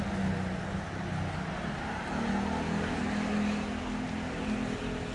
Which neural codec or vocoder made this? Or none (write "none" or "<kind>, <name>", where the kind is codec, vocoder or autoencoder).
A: none